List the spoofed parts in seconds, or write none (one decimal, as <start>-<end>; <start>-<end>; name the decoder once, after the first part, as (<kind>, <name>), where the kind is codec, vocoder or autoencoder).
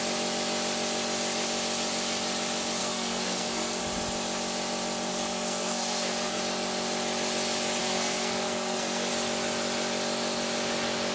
2.8-3.8 (codec, SNAC); 5.1-6.4; 7.8-9.1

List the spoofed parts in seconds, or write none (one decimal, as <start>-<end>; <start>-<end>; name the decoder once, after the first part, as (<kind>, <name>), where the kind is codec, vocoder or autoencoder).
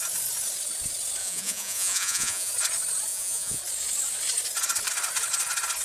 1.2-2.5 (vocoder, Vocos); 3.1-3.6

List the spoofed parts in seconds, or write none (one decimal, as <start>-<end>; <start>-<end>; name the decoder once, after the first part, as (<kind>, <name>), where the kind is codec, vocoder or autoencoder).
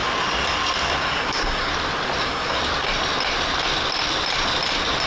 1.0-1.7 (codec, SNAC); 2.2-2.6